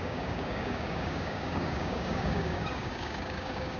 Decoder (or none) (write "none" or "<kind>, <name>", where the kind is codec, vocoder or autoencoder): codec, DAC